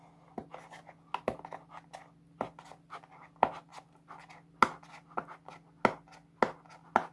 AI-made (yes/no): no